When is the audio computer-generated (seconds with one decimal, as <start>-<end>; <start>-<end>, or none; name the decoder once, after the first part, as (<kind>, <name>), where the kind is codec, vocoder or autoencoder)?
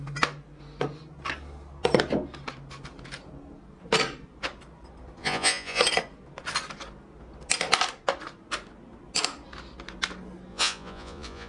5.2-5.8 (vocoder, Vocos); 10.5-11.5